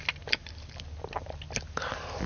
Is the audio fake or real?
real